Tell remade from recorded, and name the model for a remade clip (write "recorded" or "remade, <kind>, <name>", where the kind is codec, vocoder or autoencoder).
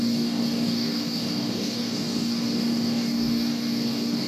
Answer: remade, codec, DAC